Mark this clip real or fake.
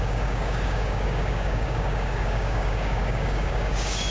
fake